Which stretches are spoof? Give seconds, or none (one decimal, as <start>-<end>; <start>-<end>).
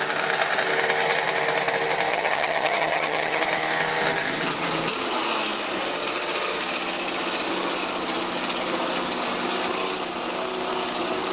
2.1-3.4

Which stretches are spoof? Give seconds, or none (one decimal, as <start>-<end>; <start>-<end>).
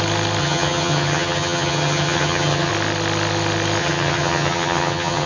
0.4-2.7; 3.8-5.3